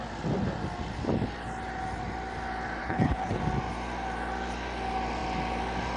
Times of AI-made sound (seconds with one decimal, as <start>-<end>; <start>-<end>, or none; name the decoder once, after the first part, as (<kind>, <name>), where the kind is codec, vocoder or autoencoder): 2.8-3.4 (codec, HILCodec)